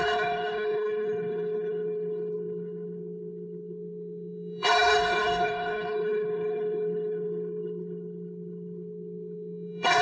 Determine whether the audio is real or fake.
fake